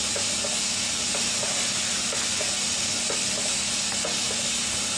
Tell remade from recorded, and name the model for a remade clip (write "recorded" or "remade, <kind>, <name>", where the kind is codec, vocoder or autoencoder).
recorded